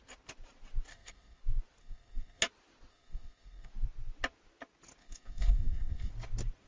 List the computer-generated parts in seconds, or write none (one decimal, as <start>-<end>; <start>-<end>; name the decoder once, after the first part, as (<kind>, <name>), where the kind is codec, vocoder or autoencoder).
0.9-1.4 (codec, SNAC); 1.8-2.4; 2.9-3.7; 5.0-6.1